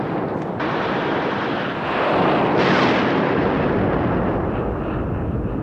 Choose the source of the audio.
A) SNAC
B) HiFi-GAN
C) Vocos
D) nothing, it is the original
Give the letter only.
D